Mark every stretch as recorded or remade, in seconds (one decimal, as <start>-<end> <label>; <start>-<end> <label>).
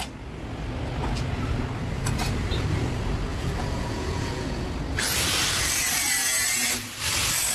0.0-3.3 recorded; 3.3-4.5 remade; 4.5-7.5 recorded